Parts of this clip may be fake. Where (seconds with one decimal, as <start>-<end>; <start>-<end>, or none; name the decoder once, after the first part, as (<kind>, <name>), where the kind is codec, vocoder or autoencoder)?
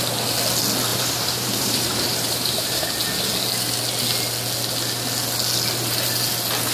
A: 0.9-2.9 (vocoder, BigVGAN v2)